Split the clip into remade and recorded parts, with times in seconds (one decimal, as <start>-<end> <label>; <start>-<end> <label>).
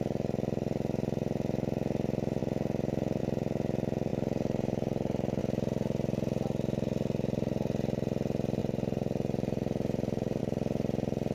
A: 0.0-4.1 recorded; 4.1-5.4 remade; 5.4-8.6 recorded; 8.6-10.4 remade; 10.4-11.3 recorded